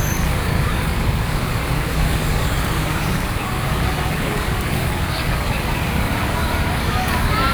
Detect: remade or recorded remade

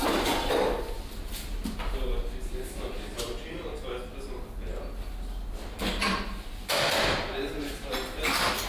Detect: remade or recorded recorded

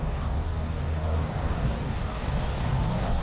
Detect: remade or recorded remade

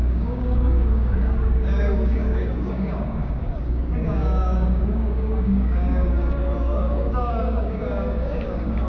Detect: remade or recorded remade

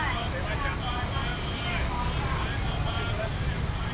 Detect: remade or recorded recorded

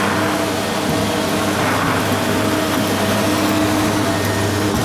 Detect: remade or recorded recorded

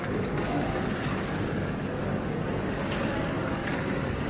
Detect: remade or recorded remade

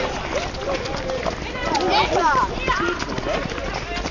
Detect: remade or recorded recorded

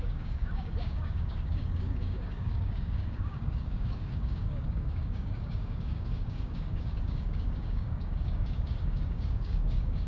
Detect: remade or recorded remade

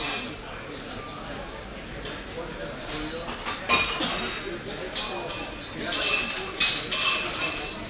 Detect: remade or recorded recorded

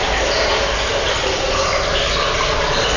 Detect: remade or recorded recorded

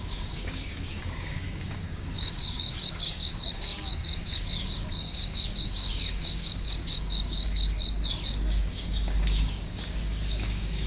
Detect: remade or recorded remade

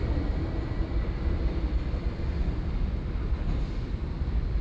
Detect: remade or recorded recorded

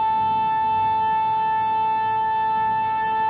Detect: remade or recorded recorded